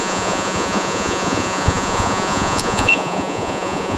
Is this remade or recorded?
remade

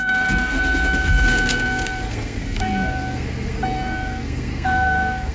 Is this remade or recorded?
remade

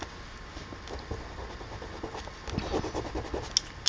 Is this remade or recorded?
recorded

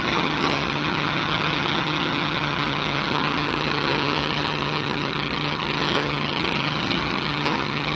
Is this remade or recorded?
remade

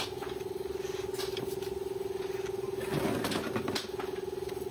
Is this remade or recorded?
recorded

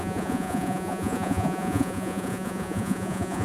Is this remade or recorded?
remade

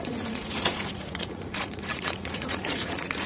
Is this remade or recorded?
remade